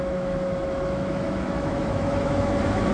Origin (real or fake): fake